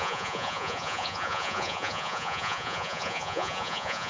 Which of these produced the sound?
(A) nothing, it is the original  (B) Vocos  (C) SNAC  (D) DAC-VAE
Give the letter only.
B